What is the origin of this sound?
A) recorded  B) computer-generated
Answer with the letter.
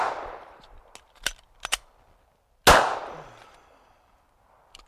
A